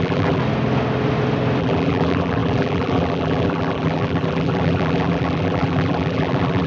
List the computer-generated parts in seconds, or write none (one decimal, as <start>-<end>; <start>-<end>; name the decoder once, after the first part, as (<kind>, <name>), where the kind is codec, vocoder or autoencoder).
0.0-0.4 (vocoder, BigVGAN v2); 1.6-6.7